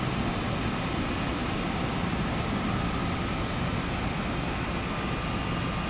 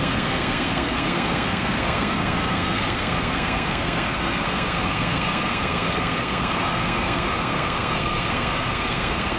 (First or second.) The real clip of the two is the first